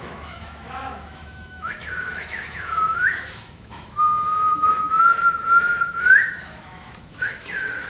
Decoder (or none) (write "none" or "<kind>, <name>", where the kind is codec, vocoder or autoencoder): autoencoder, DAC-VAE